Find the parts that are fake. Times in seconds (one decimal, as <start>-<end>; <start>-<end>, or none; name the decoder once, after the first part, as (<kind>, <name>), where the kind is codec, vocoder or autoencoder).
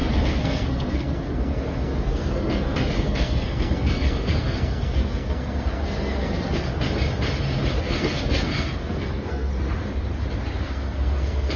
0.0-6.7 (codec, SNAC); 7.8-9.5; 10.6-11.6